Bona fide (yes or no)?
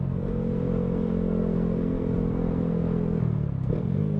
no